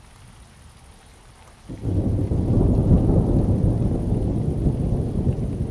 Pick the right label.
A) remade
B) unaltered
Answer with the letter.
B